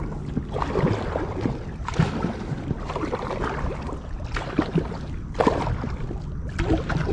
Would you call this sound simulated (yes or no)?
no